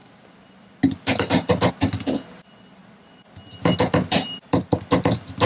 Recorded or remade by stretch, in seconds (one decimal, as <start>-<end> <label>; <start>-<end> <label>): 0.0-5.5 recorded